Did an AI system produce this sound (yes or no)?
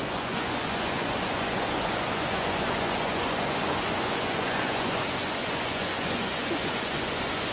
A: yes